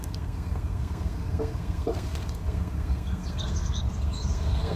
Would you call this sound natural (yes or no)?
no